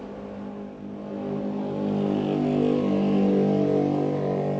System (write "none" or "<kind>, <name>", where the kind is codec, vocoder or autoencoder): none